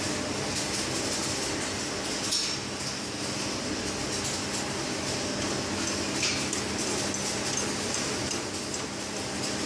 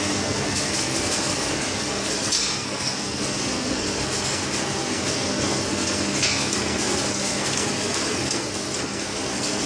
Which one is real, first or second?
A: first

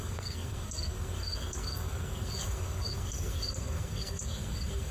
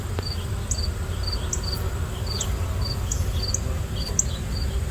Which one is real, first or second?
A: second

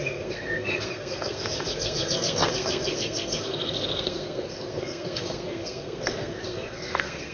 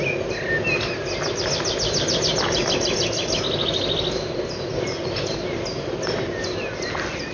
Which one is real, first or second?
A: second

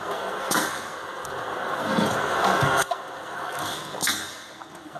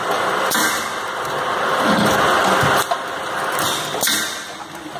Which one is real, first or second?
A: second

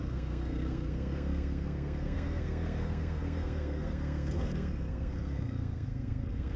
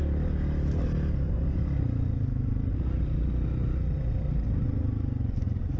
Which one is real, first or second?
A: second